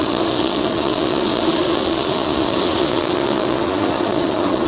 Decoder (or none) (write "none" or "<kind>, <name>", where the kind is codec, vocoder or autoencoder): vocoder, Vocos